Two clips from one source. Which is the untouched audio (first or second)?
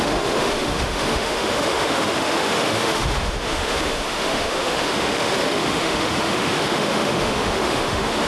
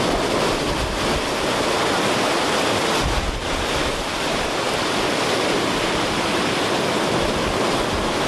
second